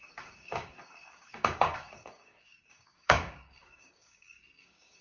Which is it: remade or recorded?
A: remade